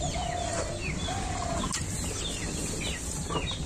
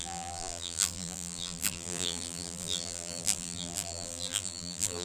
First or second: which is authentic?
first